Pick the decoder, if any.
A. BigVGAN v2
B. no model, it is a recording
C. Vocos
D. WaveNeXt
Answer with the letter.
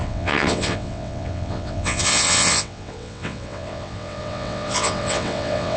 D